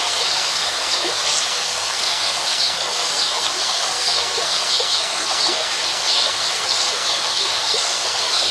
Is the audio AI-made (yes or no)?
yes